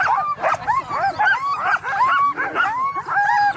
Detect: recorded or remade recorded